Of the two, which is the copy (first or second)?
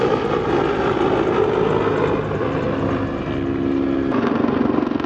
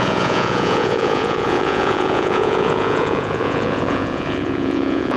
second